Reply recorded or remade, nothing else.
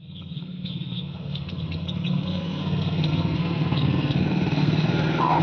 remade